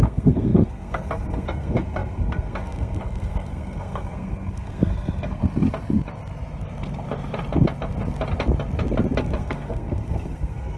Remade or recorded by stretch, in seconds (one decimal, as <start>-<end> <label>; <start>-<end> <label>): 0.0-5.4 remade; 5.4-9.2 recorded; 9.2-10.8 remade

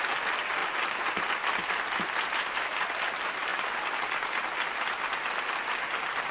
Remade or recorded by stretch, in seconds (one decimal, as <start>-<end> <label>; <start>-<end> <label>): 0.0-6.3 recorded